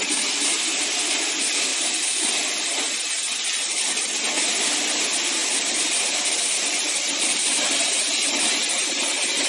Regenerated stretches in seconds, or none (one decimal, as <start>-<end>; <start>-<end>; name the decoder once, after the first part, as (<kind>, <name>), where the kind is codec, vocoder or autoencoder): 1.7-2.9 (vocoder, BigVGAN v2); 3.7-4.5; 5.4-7.3